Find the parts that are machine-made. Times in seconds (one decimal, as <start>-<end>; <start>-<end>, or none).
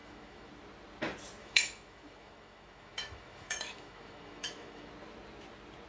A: 0.0-0.5; 1.4-4.9